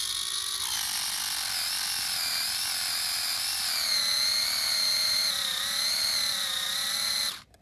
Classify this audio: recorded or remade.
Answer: recorded